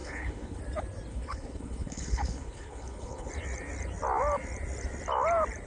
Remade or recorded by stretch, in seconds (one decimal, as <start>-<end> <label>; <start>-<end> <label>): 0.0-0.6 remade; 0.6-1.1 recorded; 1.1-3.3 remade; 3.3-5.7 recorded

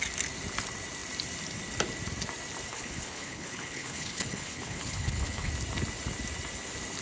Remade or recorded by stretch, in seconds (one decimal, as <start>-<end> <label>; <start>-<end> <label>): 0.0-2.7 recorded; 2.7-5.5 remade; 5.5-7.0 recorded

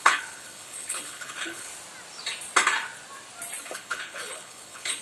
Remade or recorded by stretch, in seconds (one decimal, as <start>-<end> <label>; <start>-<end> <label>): 0.0-1.7 remade; 1.7-3.6 recorded; 3.6-5.0 remade